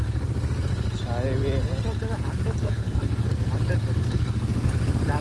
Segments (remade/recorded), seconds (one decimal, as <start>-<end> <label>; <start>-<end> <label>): 0.0-2.6 recorded; 2.6-3.5 remade; 3.5-4.0 recorded; 4.0-4.7 remade; 4.7-5.2 recorded